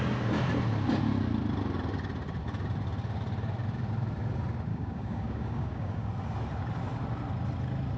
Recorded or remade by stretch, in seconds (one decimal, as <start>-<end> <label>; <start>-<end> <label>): 0.0-4.7 recorded; 4.7-6.1 remade; 6.1-8.0 recorded